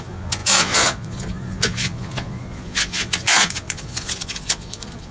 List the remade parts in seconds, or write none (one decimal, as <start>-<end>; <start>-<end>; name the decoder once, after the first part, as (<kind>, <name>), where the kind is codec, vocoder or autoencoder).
0.0-5.1 (vocoder, Vocos)